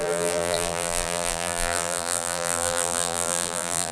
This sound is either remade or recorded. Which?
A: remade